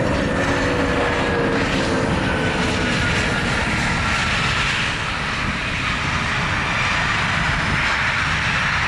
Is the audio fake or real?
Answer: real